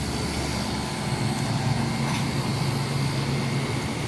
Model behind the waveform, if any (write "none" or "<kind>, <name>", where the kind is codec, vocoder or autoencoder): none